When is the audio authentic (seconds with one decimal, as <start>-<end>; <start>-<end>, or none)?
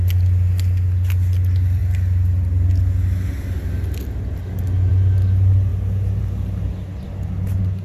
0.0-7.8